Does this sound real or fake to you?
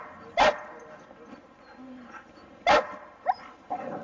real